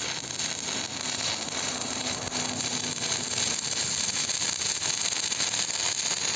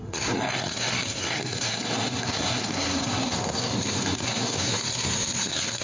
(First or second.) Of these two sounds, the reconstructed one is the second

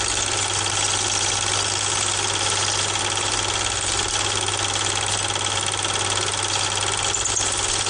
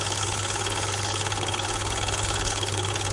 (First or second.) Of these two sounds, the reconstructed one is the second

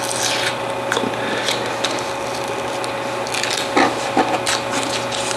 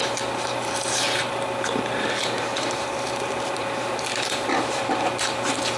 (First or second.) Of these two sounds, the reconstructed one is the second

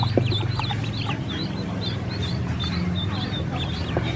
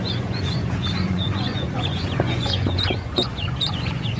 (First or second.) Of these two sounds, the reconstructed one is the second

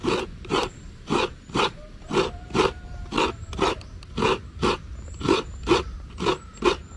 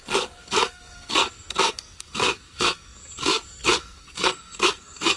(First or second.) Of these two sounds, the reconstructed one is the second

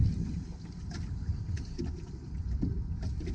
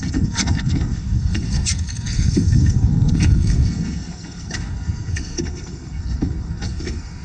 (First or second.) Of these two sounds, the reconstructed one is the second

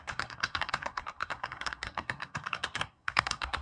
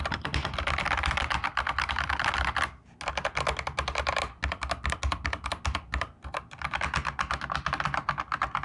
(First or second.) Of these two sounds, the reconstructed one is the first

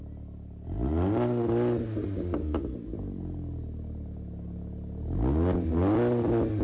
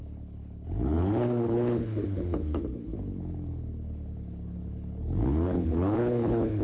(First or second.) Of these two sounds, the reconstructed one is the second